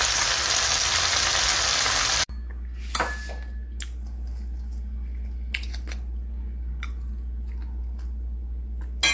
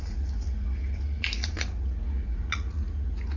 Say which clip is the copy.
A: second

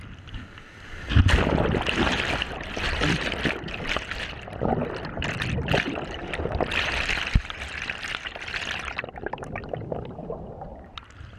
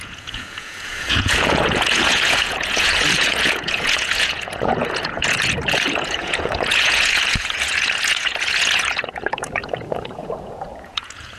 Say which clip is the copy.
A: second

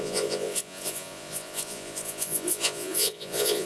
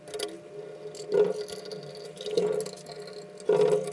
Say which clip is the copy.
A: first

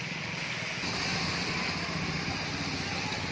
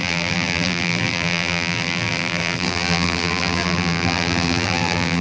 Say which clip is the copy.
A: second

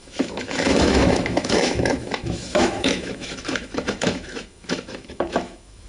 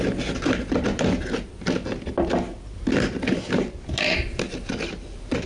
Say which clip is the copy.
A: first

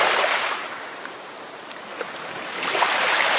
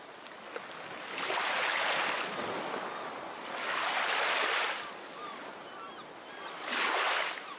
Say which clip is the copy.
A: first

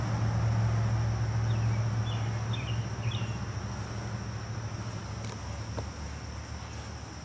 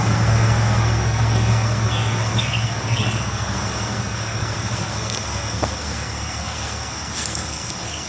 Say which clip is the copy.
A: second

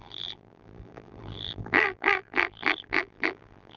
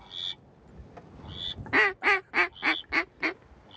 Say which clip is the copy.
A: first